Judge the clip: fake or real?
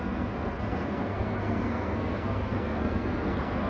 fake